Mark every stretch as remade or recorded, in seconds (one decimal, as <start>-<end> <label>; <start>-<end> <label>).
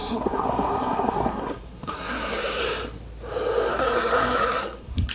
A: 0.0-2.6 remade; 2.6-3.7 recorded; 3.7-5.1 remade